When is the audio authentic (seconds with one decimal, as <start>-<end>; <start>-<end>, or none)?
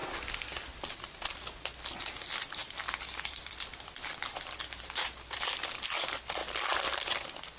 0.0-2.6; 4.4-7.6